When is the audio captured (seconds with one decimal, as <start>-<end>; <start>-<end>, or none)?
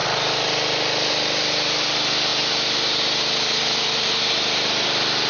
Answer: 0.0-5.3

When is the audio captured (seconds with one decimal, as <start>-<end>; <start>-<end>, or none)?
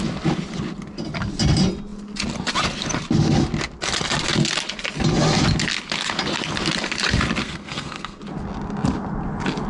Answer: 0.0-7.4; 8.2-9.7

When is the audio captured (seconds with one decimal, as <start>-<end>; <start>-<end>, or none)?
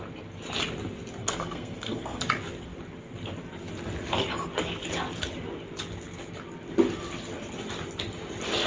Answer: 0.0-1.2; 2.2-8.7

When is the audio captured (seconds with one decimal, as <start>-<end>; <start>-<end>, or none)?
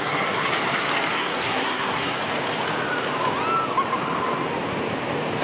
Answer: 0.5-1.1; 2.2-5.4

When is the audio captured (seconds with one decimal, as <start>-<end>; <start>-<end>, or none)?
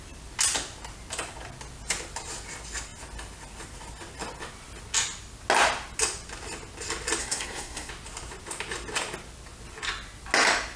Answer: 0.0-7.2; 7.9-10.8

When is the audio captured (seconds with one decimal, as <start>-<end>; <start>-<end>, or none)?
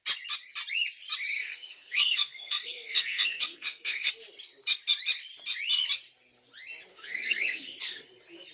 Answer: 0.0-1.3; 4.1-6.9; 8.0-8.5